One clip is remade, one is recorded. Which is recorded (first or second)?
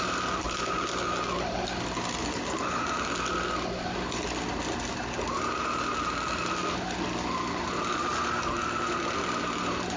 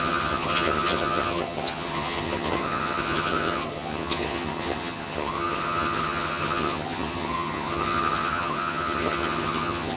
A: first